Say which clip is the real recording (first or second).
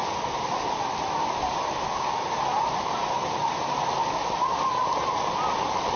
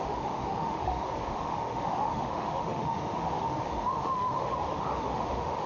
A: first